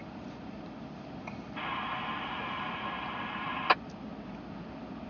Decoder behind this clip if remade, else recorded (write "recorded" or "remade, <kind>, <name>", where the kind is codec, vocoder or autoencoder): recorded